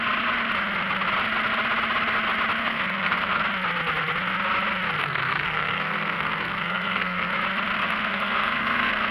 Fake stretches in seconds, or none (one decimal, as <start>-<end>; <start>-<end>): 2.6-3.4; 5.0-7.3; 7.8-9.1